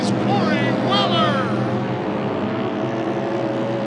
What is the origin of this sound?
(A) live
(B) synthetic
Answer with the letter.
A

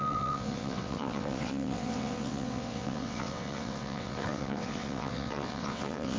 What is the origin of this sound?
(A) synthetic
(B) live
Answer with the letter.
A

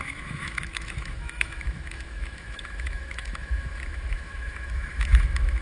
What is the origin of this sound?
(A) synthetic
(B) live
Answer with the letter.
A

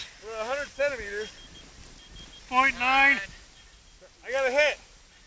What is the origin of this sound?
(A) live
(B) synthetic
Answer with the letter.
A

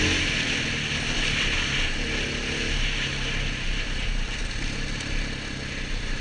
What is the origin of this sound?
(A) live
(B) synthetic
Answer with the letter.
A